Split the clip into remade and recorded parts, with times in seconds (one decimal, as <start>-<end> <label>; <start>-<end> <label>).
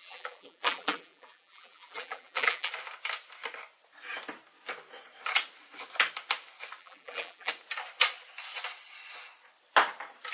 0.0-2.7 remade; 2.7-6.8 recorded; 6.8-7.5 remade; 7.5-10.3 recorded